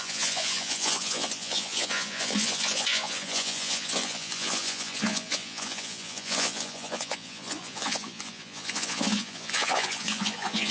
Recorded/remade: remade